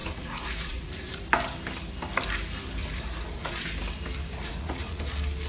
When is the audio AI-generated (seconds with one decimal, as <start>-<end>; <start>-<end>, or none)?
0.0-1.2; 2.8-3.5; 4.3-5.0

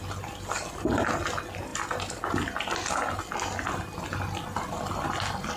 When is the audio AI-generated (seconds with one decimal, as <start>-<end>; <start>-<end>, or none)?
none

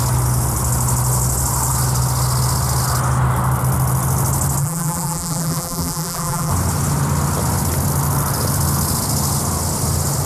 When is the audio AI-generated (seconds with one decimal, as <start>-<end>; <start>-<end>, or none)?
4.6-6.5

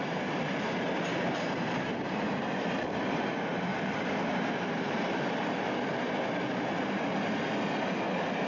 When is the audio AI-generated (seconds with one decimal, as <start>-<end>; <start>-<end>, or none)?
1.1-3.3; 3.7-5.7